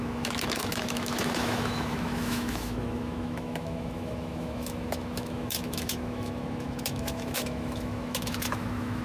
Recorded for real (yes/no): no